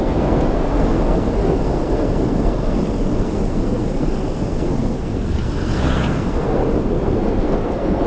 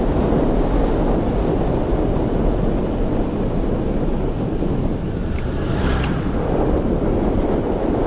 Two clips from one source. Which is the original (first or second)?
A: second